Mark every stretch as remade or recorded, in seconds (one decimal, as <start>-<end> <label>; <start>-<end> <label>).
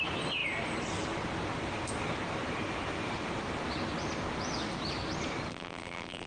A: 0.0-5.5 recorded; 5.5-6.3 remade